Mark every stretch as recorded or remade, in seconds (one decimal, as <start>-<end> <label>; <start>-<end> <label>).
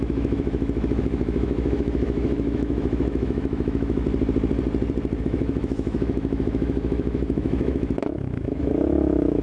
0.0-4.0 remade; 4.0-5.2 recorded; 5.2-9.4 remade